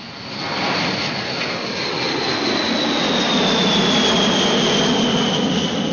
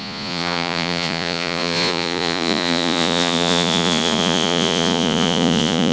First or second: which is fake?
second